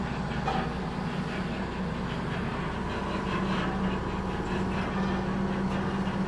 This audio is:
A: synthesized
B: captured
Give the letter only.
B